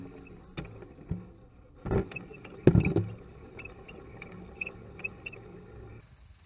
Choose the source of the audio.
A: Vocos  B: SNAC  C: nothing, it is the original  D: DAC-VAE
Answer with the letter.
C